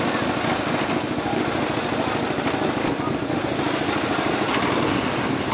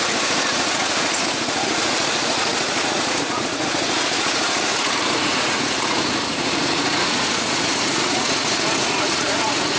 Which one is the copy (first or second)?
second